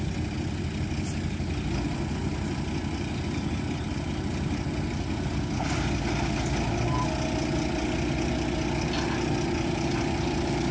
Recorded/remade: recorded